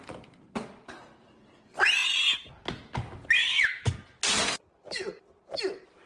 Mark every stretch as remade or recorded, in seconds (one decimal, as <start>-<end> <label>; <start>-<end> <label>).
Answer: 0.0-6.1 recorded